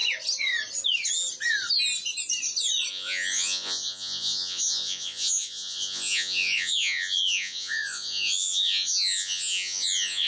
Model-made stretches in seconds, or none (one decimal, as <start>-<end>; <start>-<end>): 2.9-10.3